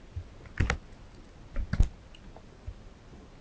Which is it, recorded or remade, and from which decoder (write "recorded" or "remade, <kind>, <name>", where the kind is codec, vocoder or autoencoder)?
recorded